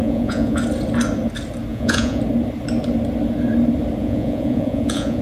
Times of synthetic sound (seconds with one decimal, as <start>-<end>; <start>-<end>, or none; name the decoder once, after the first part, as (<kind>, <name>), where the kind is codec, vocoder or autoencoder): 0.0-0.6 (vocoder, Vocos); 1.7-2.2; 4.0-5.2